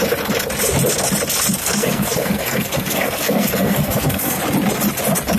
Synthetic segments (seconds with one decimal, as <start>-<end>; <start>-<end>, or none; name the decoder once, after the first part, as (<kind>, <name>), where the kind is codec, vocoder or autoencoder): 1.6-4.4 (codec, SNAC)